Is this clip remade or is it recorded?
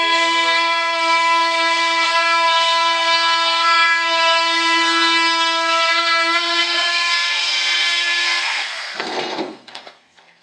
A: remade